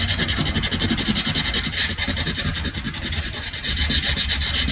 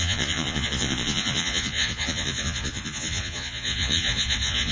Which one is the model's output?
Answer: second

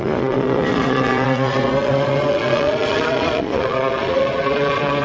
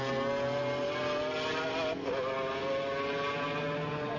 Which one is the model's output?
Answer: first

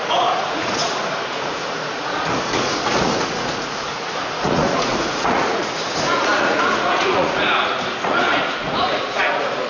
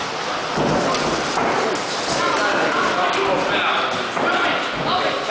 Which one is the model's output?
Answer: first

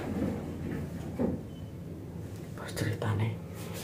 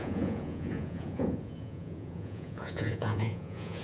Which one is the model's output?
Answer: second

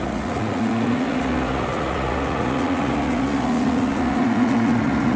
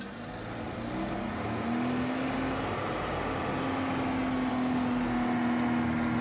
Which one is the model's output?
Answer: first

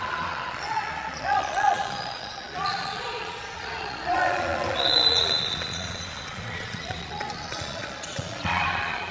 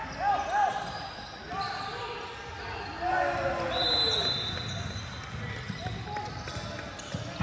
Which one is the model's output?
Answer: first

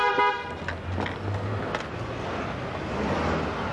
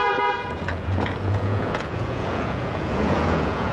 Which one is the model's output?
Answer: second